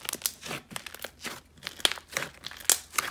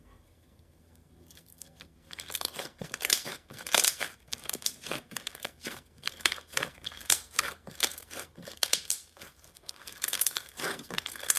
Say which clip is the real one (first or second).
first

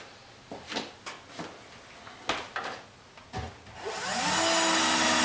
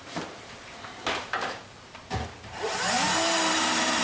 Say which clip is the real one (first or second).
first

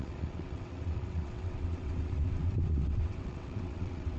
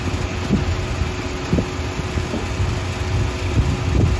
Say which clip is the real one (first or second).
second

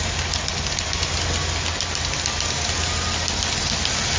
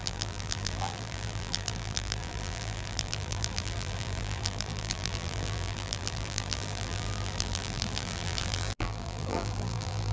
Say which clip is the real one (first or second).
first